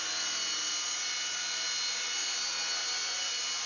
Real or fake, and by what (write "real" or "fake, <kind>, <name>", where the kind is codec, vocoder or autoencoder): real